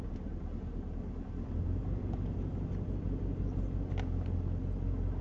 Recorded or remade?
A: recorded